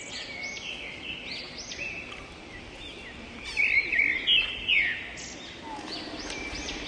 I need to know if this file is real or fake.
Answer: real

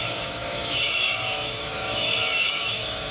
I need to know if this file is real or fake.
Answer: fake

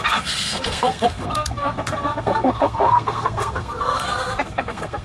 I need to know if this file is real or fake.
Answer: fake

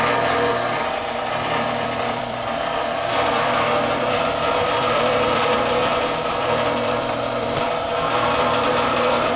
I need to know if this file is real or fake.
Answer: fake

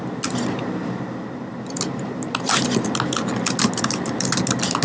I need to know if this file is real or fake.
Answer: real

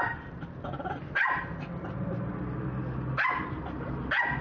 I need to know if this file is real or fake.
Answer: real